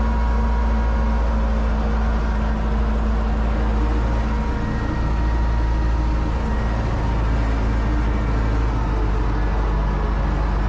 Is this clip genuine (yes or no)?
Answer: yes